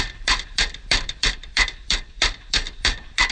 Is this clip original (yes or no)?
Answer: no